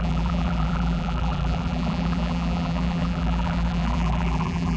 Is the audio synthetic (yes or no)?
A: yes